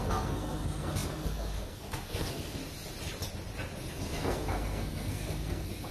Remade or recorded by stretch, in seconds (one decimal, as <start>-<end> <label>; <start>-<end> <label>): 0.0-2.6 remade; 2.6-3.9 recorded; 3.9-5.9 remade